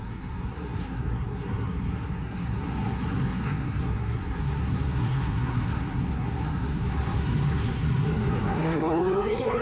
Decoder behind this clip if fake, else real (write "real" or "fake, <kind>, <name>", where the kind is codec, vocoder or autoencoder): fake, codec, SNAC